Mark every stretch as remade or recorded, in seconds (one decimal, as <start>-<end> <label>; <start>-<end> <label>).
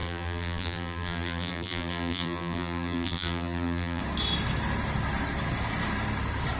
0.0-4.0 remade; 4.0-6.6 recorded